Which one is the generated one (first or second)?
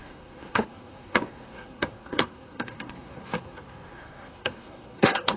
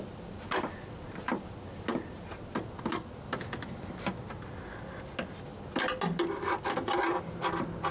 first